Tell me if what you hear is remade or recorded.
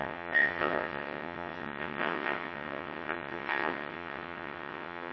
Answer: remade